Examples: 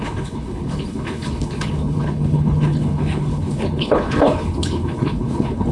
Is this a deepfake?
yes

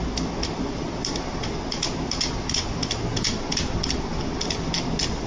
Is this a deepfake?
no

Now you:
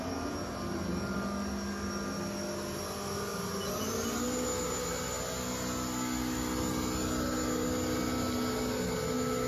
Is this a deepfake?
no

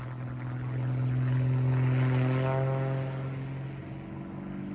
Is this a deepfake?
no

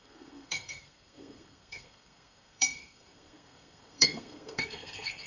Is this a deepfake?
yes